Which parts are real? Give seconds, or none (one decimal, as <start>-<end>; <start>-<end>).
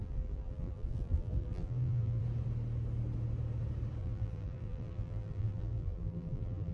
2.2-4.0